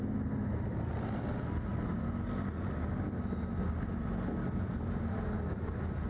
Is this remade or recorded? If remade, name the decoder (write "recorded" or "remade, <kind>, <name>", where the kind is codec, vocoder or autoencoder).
recorded